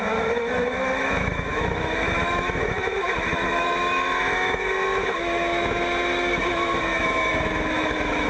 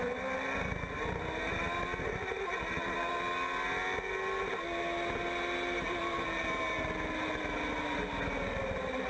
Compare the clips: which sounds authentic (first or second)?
second